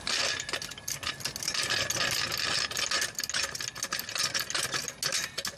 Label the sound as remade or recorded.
recorded